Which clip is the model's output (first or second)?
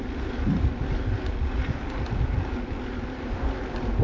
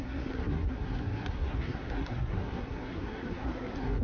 second